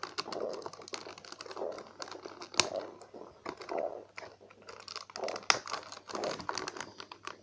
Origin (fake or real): real